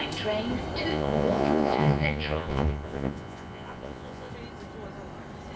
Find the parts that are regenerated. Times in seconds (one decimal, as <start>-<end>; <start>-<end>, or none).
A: 0.9-4.3